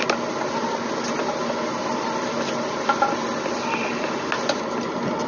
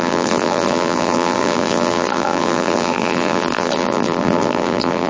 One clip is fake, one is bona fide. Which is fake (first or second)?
second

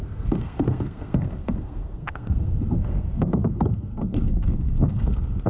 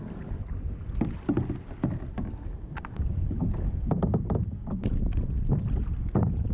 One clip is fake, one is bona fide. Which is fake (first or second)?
first